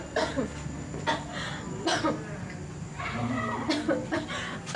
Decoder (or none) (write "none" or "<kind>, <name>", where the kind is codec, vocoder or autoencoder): none